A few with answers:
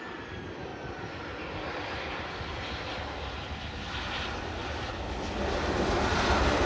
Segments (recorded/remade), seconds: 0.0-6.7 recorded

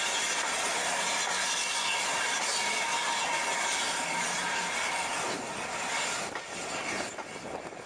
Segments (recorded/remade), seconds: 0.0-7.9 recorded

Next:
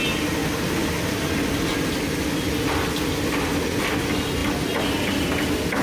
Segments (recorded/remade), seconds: 0.0-5.8 recorded

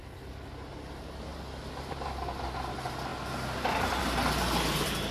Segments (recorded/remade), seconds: 0.0-5.1 recorded

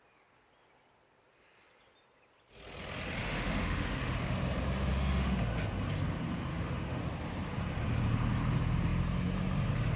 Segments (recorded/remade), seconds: 0.0-3.2 recorded; 3.2-4.0 remade; 4.0-4.9 recorded; 4.9-5.4 remade; 5.4-6.5 recorded; 6.5-7.0 remade; 7.0-10.0 recorded

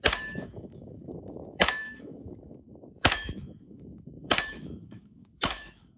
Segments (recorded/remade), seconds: 0.0-6.0 remade

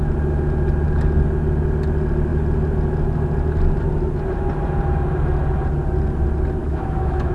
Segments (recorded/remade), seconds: 0.0-6.6 recorded; 6.6-7.3 remade